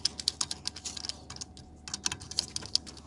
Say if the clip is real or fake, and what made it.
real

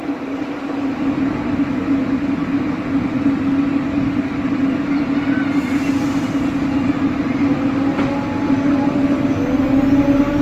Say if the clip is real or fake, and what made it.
real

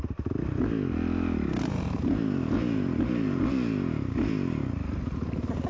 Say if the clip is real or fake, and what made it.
real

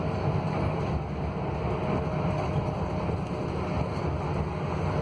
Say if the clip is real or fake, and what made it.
real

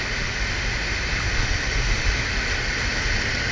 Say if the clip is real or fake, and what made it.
real